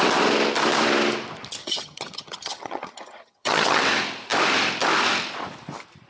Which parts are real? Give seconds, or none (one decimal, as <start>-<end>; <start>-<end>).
0.0-1.6; 3.8-6.1